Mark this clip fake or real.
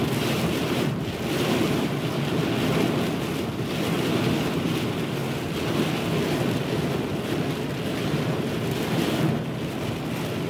real